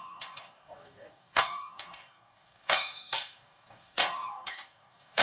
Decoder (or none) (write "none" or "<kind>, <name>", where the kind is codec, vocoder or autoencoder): codec, DAC